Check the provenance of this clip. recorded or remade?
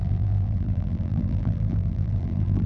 remade